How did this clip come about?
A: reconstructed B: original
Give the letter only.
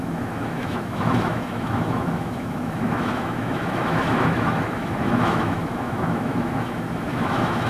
A